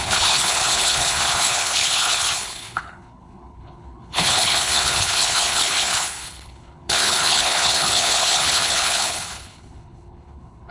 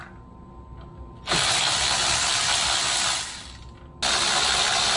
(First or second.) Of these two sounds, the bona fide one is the second